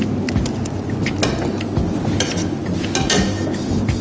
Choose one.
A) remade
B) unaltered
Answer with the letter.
B